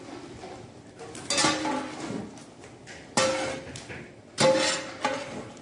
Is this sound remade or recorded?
recorded